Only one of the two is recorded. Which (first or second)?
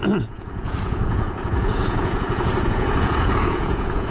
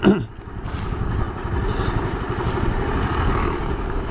second